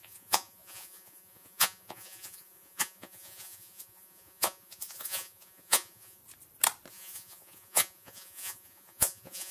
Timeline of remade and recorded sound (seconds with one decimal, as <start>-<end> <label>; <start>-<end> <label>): 0.0-6.2 remade; 6.2-6.9 recorded; 6.9-9.5 remade